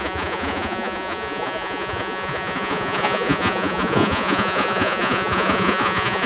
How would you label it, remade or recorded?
remade